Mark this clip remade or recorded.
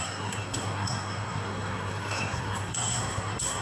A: remade